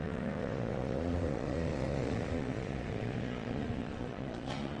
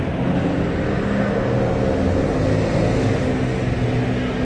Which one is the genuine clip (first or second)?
second